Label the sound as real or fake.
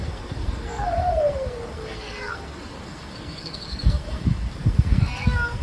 fake